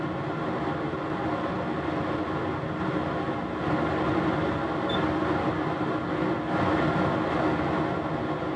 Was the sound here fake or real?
real